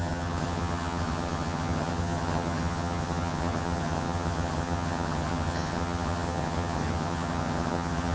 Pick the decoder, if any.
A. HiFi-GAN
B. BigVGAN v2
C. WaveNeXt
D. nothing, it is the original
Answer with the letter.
A